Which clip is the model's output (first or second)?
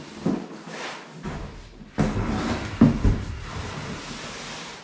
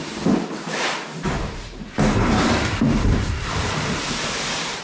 second